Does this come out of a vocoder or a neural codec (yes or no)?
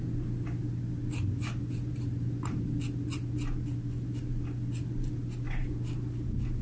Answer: no